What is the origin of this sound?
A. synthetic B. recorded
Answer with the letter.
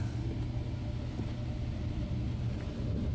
B